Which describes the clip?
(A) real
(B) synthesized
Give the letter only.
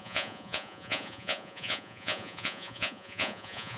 B